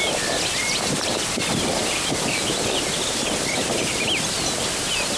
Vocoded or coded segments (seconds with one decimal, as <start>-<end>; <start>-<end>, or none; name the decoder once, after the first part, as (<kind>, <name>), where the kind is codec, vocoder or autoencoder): none